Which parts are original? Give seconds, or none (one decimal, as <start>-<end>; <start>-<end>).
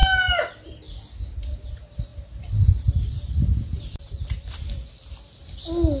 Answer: 0.0-1.7; 2.1-6.0